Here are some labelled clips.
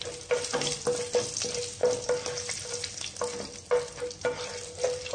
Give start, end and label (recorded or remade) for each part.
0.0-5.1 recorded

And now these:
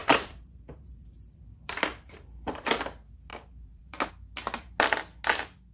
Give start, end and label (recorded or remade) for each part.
0.0-2.7 remade; 2.7-3.3 recorded; 3.3-4.1 remade; 4.1-5.7 recorded

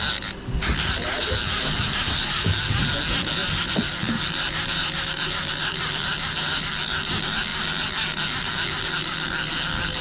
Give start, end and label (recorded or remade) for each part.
0.0-0.6 recorded; 0.6-2.8 remade; 2.8-3.4 recorded; 3.4-6.7 remade; 6.7-10.0 recorded

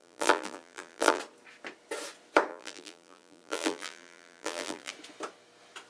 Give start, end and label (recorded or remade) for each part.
0.0-1.2 remade; 1.2-2.5 recorded; 2.5-4.9 remade; 4.9-5.9 recorded

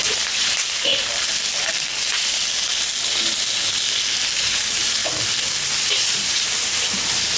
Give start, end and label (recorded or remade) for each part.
0.0-0.9 remade; 0.9-4.4 recorded; 4.4-5.0 remade; 5.0-5.8 recorded; 5.8-7.4 remade